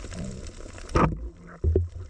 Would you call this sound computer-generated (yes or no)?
no